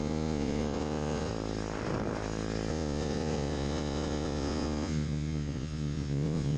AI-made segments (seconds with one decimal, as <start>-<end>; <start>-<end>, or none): 0.0-1.3; 2.7-6.6